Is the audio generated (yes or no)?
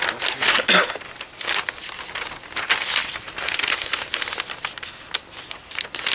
no